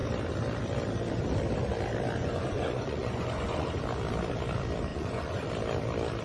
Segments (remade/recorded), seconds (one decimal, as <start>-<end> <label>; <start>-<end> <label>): 0.0-2.2 recorded; 2.2-3.8 remade; 3.8-4.9 recorded; 4.9-5.5 remade; 5.5-6.2 recorded